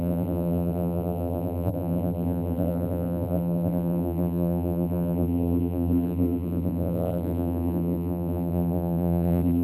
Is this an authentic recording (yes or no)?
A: no